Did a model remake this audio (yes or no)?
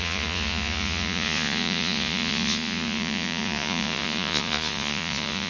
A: yes